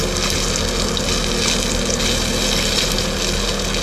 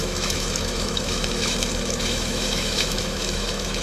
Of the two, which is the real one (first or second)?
first